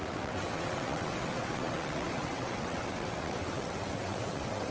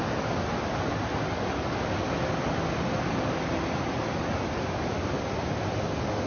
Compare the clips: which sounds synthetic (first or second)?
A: first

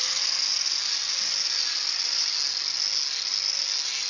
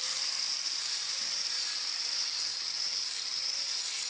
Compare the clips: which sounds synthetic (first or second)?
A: second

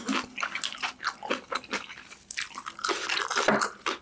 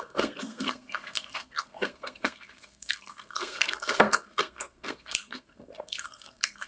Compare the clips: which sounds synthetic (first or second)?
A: second